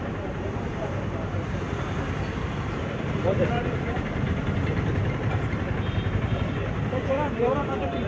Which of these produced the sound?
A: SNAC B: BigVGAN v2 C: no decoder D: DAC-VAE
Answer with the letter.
B